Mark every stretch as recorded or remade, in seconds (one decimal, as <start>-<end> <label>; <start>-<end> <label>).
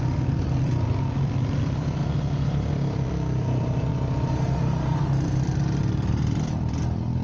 0.0-2.0 remade; 2.0-2.7 recorded; 2.7-3.9 remade; 3.9-5.8 recorded; 5.8-7.2 remade